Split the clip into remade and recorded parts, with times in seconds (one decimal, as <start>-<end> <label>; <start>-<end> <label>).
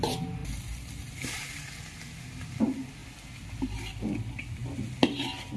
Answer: 0.0-5.6 recorded